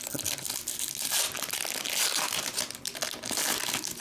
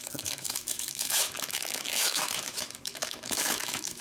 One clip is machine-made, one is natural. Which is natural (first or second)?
first